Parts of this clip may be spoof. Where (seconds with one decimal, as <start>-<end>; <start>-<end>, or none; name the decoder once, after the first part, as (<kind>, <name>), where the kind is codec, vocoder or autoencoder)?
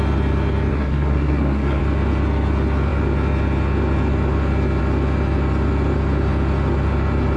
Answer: 0.7-1.8 (codec, SNAC)